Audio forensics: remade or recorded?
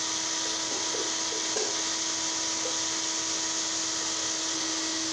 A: recorded